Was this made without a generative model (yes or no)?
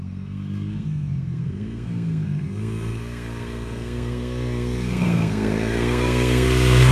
no